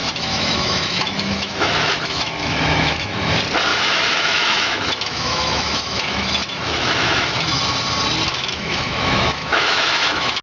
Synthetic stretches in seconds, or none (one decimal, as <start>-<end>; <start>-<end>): 0.0-3.3; 3.7-7.6; 8.3-10.4